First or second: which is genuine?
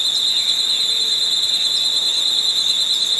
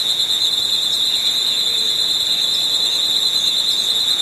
first